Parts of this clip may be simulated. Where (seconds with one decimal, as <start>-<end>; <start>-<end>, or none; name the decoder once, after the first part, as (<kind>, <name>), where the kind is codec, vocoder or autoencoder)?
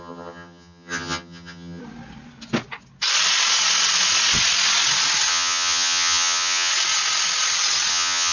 0.0-1.8 (vocoder, HiFi-GAN); 5.3-6.7; 7.9-8.3